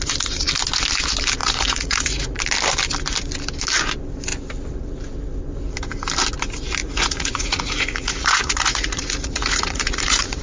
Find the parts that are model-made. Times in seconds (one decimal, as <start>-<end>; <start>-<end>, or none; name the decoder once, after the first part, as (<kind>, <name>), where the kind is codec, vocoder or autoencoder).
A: 1.4-2.4 (vocoder, Vocos); 6.8-10.4